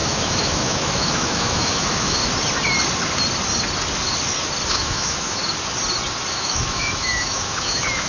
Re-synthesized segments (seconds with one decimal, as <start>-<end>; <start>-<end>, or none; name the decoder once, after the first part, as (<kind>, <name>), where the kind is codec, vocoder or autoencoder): 0.0-2.2 (autoencoder, DAC-VAE); 4.7-5.4; 6.3-8.1